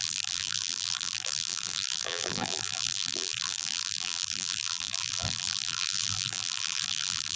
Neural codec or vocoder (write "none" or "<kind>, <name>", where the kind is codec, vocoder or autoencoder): vocoder, BigVGAN v2